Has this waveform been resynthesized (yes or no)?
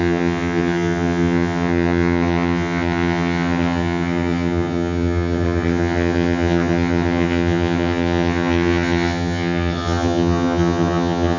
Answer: yes